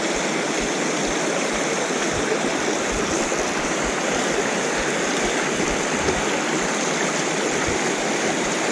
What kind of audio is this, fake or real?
real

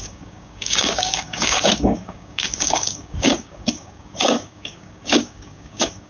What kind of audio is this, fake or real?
fake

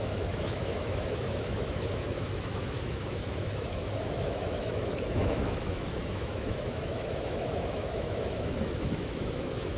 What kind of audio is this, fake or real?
fake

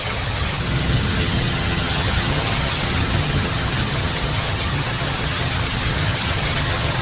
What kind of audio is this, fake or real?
fake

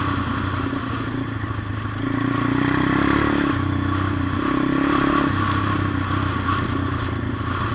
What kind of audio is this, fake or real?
real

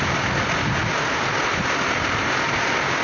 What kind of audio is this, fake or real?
real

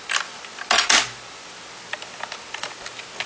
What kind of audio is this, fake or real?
real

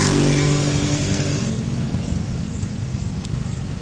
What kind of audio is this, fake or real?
fake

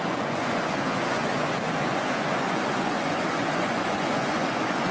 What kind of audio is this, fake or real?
fake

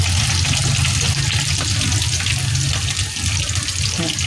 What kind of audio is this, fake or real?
real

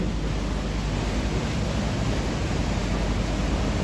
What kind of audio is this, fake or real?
real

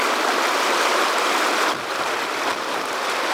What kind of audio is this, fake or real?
fake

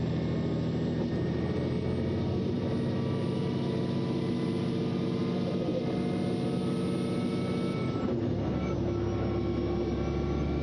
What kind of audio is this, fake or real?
real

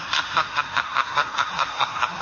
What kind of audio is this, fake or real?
fake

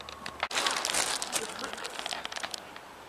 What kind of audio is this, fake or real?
real